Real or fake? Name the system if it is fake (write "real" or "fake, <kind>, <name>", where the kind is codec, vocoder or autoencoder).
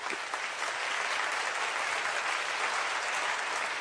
real